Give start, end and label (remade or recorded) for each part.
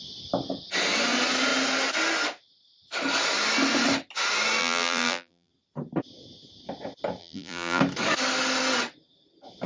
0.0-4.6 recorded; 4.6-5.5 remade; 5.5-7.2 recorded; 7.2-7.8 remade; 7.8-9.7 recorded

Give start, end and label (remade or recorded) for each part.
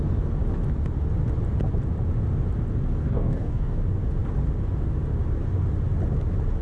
0.0-3.0 recorded; 3.0-3.8 remade; 3.8-6.6 recorded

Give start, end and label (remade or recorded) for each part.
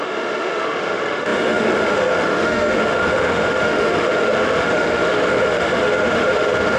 0.0-6.8 remade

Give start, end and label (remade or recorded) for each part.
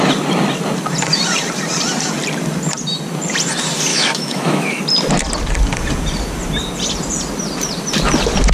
0.0-3.9 recorded; 3.9-4.8 remade; 4.8-8.5 recorded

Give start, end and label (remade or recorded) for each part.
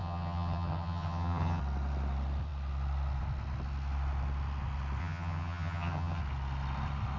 0.0-1.6 remade; 1.6-5.0 recorded; 5.0-6.2 remade; 6.2-7.2 recorded